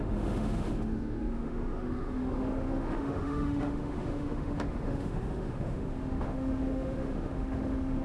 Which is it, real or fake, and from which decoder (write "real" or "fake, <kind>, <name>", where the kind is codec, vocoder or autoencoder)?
fake, autoencoder, DAC-VAE